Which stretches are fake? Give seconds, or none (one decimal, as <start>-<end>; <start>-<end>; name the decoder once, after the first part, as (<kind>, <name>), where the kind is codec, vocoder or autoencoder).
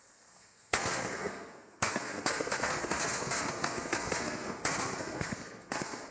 0.0-6.1 (codec, SNAC)